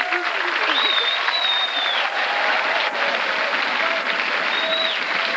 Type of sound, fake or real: real